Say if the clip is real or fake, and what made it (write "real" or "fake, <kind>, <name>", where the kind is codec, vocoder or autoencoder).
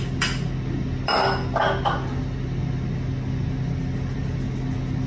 real